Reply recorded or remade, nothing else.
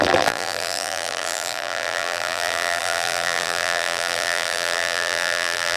remade